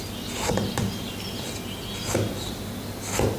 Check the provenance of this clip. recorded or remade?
recorded